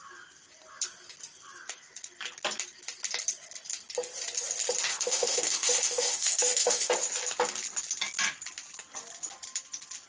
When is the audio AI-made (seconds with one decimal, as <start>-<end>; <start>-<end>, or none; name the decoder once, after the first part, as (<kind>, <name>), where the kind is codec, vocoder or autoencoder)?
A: 4.9-6.9 (autoencoder, DAC-VAE)